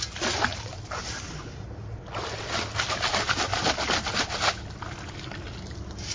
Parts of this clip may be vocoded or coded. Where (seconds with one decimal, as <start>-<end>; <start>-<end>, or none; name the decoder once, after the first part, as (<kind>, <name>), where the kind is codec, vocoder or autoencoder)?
none